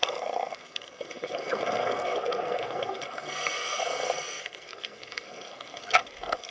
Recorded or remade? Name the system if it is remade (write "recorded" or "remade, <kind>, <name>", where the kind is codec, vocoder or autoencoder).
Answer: remade, codec, SNAC